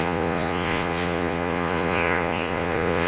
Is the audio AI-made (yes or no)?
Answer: yes